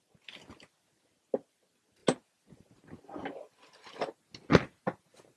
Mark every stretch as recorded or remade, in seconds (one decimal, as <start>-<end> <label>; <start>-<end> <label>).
0.0-5.4 recorded